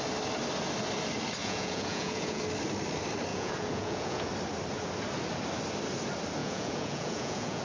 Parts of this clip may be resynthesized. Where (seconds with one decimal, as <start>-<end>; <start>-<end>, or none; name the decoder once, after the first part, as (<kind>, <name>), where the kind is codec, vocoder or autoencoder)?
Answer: 1.4-2.4 (vocoder, Vocos); 3.3-4.3; 6.4-7.6